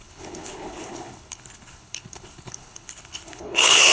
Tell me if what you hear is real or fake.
fake